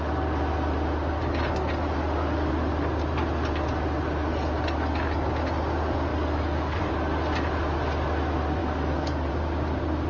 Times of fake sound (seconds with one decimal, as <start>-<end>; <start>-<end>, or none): 6.1-6.9; 8.6-9.3